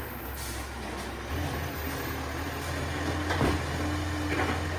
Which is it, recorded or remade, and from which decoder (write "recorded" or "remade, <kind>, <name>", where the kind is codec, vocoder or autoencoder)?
recorded